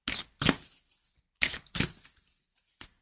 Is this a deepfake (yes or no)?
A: no